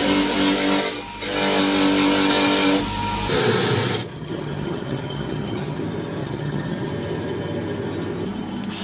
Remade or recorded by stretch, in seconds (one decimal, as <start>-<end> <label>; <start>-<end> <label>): 0.0-4.1 recorded; 4.1-5.8 remade; 5.8-6.2 recorded; 6.2-6.9 remade; 6.9-8.8 recorded